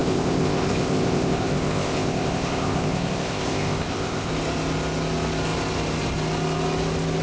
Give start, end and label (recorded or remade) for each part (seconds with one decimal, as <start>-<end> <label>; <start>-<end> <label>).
0.0-4.3 remade; 4.3-7.2 recorded

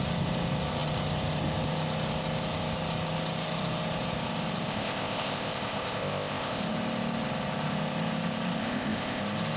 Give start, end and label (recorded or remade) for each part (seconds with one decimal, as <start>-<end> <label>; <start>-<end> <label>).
0.0-4.7 recorded; 4.7-6.6 remade; 6.6-8.6 recorded; 8.6-9.2 remade; 9.2-9.6 recorded

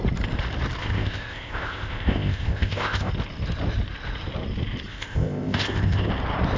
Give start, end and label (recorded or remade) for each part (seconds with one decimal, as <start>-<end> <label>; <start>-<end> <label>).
0.0-0.8 recorded; 0.8-3.1 remade; 3.1-4.9 recorded; 4.9-6.1 remade; 6.1-6.6 recorded

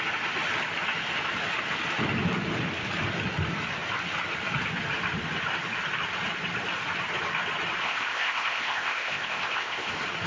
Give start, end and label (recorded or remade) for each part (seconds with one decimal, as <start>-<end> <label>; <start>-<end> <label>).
0.0-7.8 recorded; 7.8-9.9 remade; 9.9-10.3 recorded

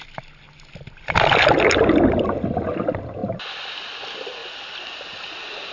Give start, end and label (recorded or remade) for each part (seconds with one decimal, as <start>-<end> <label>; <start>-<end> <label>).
0.0-5.7 recorded

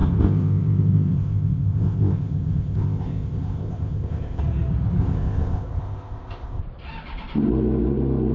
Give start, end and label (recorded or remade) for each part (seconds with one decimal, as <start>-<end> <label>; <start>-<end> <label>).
0.0-4.4 remade; 4.4-5.0 recorded; 5.0-6.6 remade; 6.6-8.3 recorded